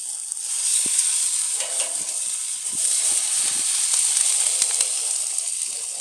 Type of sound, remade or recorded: recorded